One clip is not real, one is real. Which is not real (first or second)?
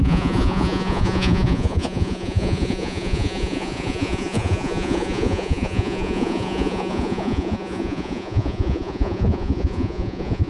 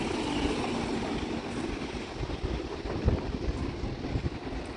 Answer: first